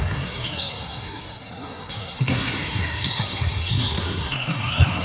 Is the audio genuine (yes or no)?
no